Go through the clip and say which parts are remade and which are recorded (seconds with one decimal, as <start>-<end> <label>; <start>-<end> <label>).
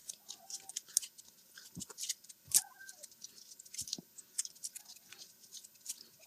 0.0-6.3 recorded